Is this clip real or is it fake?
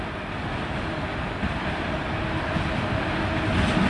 real